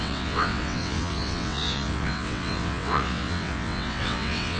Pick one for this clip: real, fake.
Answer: fake